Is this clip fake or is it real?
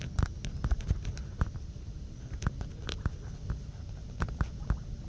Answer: real